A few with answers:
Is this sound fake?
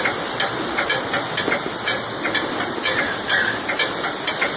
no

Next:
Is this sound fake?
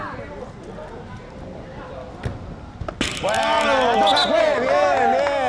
no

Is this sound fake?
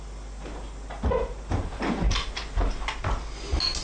no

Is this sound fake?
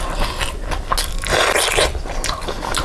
no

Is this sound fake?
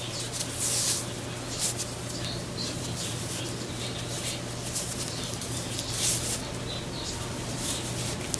no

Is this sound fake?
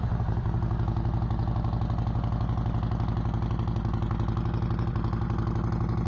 no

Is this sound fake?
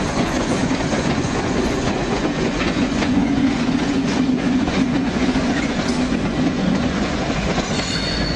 yes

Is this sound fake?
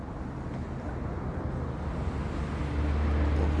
no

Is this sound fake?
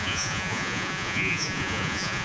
yes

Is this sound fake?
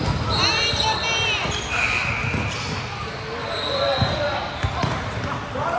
no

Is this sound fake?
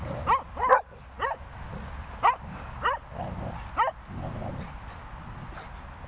no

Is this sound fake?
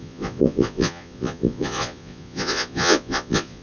yes